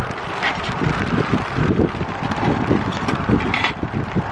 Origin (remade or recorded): remade